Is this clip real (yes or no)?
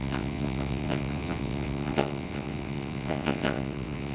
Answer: no